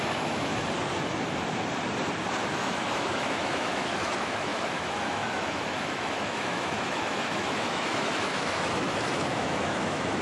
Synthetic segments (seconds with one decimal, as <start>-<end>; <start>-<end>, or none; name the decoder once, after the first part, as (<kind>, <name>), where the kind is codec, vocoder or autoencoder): 0.0-0.5 (autoencoder, DAC-VAE); 2.5-10.2